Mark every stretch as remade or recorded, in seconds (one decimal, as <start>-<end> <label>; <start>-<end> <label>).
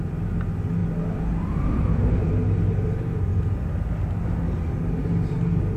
0.0-5.8 recorded